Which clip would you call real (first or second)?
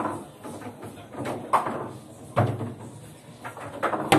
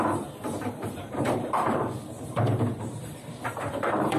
first